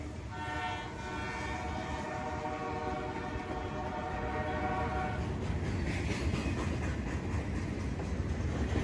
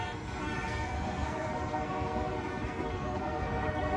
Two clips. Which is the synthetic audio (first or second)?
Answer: second